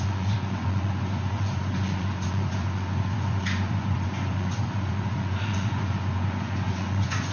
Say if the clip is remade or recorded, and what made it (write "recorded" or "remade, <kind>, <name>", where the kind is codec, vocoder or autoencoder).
remade, vocoder, Vocos